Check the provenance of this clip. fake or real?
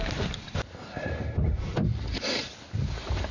real